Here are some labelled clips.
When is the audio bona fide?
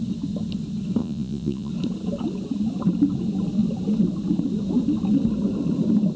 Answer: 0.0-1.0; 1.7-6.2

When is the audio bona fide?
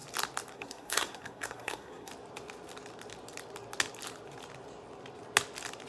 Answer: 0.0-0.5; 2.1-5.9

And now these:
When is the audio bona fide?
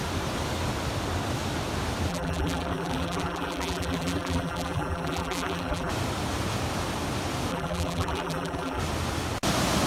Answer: 0.0-2.1; 5.9-7.5; 8.8-9.9